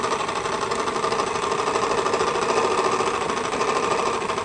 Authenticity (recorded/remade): recorded